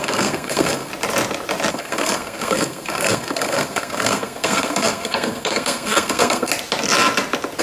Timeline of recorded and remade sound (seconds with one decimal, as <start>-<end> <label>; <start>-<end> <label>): 0.0-0.9 remade; 0.9-1.7 recorded; 1.7-6.5 remade; 6.5-7.6 recorded